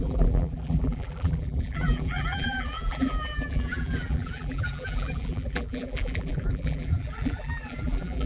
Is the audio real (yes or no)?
no